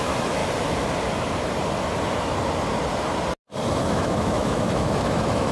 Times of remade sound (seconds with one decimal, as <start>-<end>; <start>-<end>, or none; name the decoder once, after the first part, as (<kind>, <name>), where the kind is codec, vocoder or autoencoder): 0.0-0.4 (autoencoder, DAC-VAE); 3.7-5.5